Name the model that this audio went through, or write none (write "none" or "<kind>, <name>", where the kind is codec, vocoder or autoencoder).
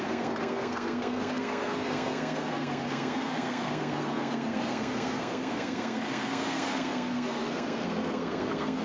codec, SNAC